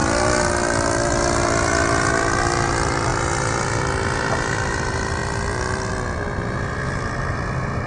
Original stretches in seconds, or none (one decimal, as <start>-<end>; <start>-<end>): 0.0-7.9